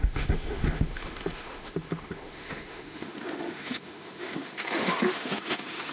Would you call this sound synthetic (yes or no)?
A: yes